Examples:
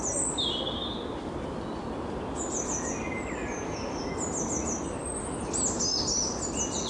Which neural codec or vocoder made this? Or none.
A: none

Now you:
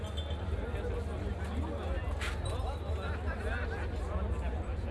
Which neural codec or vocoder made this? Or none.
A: none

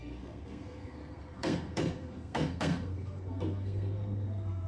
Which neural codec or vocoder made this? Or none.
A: codec, SNAC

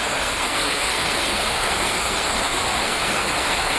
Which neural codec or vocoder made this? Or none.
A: codec, SNAC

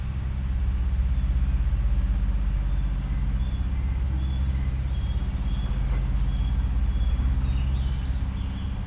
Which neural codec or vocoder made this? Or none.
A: none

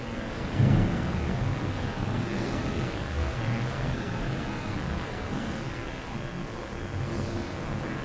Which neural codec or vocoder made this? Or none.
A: codec, SNAC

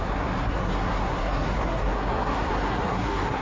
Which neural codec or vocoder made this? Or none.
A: codec, SNAC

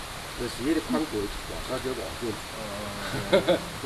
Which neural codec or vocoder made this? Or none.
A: none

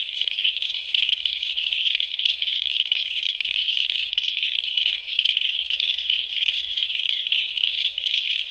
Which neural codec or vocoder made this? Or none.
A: codec, SNAC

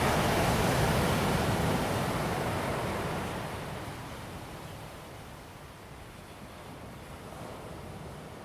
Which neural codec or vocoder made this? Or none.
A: none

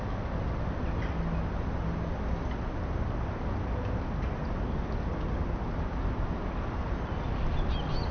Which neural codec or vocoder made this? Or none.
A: none